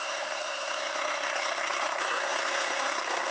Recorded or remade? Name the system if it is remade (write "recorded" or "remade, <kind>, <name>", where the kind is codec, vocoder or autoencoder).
remade, codec, SNAC